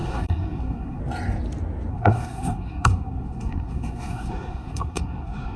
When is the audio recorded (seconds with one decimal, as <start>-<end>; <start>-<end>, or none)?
1.0-1.9